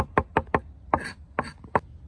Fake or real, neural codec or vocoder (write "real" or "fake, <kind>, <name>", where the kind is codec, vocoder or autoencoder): real